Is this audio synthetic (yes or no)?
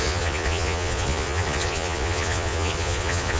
yes